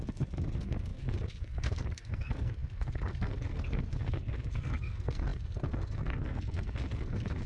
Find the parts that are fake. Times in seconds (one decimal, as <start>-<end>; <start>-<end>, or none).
0.0-7.5